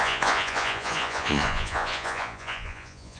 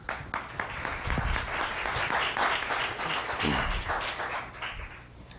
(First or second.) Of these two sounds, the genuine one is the second